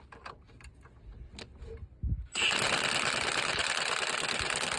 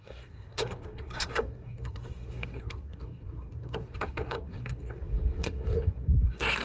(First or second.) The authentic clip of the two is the first